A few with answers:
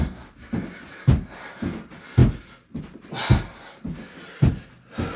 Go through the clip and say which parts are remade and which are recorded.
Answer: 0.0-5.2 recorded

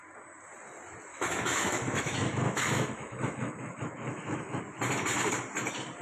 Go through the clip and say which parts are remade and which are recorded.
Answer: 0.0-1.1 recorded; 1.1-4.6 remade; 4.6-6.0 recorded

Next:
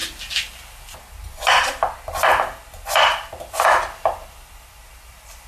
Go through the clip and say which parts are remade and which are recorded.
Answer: 0.0-5.5 recorded

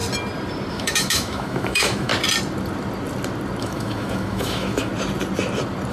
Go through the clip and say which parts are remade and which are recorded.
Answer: 0.0-0.7 recorded; 0.7-2.1 remade; 2.1-3.6 recorded; 3.6-4.9 remade; 4.9-5.9 recorded

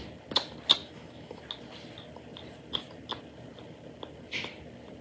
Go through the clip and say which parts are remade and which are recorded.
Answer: 0.0-0.8 recorded; 0.8-1.4 remade; 1.4-5.0 recorded